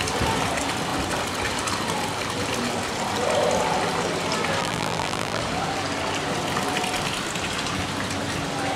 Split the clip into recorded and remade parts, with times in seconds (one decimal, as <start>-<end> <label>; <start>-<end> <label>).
0.0-4.6 recorded; 4.6-5.4 remade; 5.4-8.8 recorded